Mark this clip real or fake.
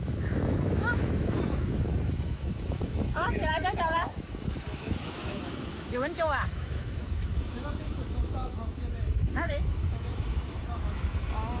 fake